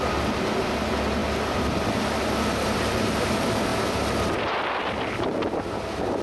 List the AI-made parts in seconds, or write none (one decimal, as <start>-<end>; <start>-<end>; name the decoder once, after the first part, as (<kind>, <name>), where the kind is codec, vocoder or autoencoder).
1.2-2.0 (vocoder, BigVGAN v2)